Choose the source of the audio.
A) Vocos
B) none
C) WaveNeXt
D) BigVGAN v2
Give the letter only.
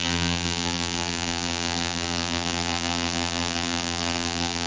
D